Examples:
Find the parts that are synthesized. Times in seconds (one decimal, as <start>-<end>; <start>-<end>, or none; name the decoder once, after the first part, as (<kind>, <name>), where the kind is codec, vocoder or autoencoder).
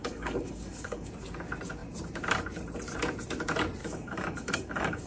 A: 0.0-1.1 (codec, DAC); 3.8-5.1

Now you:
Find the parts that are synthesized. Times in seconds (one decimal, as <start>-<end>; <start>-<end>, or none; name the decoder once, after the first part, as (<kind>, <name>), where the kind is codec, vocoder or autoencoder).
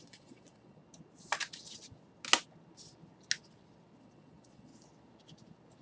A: 0.0-0.8 (vocoder, Vocos); 4.0-4.7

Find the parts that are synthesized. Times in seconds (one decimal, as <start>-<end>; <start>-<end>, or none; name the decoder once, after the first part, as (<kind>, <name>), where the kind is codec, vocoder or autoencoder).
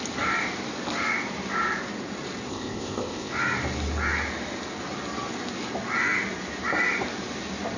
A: 2.5-3.3 (codec, ZipCodec)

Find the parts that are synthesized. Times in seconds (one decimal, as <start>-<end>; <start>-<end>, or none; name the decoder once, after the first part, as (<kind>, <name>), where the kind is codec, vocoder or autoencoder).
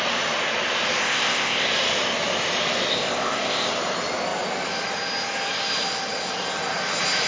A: 1.0-1.7 (codec, ZipCodec); 2.9-3.7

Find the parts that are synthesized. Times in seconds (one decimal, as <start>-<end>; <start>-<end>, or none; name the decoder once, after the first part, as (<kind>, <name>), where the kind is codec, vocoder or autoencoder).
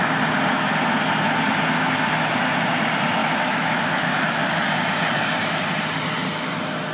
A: 3.2-4.3 (autoencoder, DAC-VAE)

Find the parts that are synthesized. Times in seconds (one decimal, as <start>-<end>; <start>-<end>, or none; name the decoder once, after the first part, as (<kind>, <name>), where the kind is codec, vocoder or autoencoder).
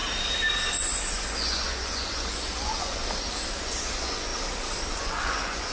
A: 0.8-3.0 (vocoder, Vocos); 3.6-4.3; 4.9-5.7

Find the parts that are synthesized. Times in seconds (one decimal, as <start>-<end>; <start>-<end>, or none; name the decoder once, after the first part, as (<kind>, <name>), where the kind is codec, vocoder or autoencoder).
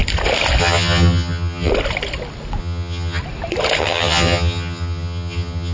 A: 0.6-1.7 (vocoder, HiFi-GAN); 2.6-3.2; 3.8-5.7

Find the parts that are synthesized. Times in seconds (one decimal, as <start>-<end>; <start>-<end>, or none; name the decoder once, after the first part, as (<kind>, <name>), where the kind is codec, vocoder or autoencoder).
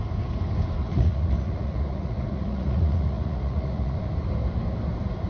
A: 0.8-4.0 (vocoder, Vocos)